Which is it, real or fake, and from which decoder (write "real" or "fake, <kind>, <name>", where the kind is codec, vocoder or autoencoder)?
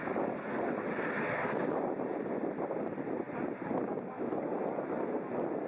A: real